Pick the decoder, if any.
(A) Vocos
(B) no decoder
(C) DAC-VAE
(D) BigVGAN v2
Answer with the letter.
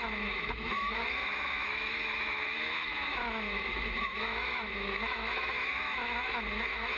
C